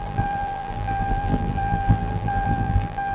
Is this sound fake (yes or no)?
yes